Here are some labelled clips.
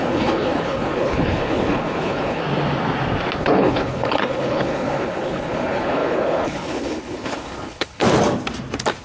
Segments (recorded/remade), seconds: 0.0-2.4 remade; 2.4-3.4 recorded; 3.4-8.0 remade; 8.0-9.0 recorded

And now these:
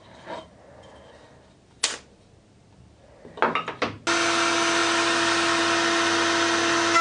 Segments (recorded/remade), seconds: 0.0-7.0 recorded

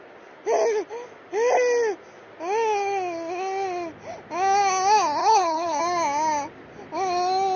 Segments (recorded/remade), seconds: 0.0-5.2 recorded; 5.2-5.8 remade; 5.8-7.6 recorded

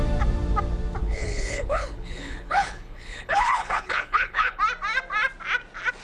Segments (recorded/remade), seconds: 0.0-1.0 recorded; 1.0-4.6 remade; 4.6-6.0 recorded